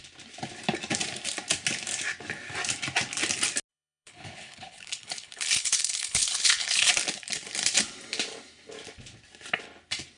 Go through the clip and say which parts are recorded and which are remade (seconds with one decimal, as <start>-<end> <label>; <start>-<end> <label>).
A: 0.0-3.7 recorded; 3.7-6.9 remade; 6.9-10.2 recorded